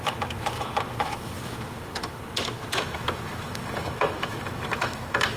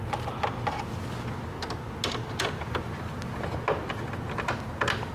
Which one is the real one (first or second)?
second